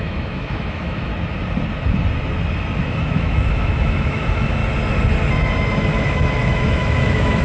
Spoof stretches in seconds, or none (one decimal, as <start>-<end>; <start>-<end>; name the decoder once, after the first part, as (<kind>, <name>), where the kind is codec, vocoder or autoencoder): 0.0-1.1 (autoencoder, DAC-VAE); 2.8-4.6; 5.8-7.4